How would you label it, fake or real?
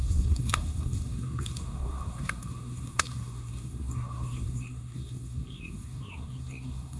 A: fake